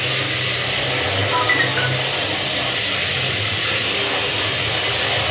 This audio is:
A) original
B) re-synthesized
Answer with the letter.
A